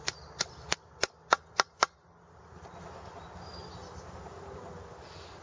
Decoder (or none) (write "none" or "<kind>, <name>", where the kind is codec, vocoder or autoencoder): none